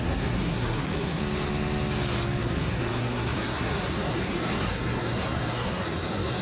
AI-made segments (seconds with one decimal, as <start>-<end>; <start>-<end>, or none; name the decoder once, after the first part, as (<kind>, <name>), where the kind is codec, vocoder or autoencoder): 0.0-1.2 (codec, SNAC); 2.4-6.4

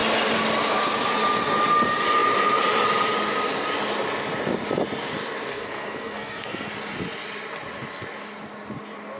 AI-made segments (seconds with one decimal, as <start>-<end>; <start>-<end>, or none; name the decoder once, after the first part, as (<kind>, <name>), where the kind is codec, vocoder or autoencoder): 5.5-6.7 (codec, SNAC)

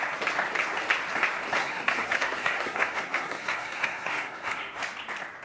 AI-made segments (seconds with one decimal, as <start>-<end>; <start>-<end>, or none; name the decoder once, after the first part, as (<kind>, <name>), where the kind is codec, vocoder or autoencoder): 1.6-4.8 (codec, SNAC)